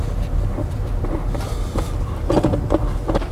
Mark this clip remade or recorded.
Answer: recorded